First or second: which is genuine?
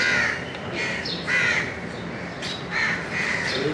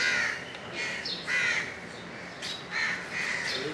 second